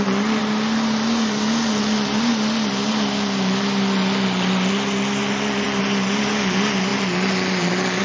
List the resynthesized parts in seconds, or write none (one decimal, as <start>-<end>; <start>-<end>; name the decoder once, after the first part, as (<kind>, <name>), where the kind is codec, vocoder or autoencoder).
5.2-5.8 (vocoder, BigVGAN v2)